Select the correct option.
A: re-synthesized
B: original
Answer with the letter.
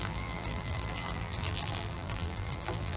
A